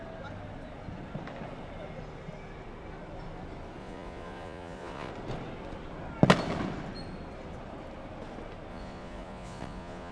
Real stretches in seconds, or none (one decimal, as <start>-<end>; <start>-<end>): 0.0-3.8; 5.1-8.7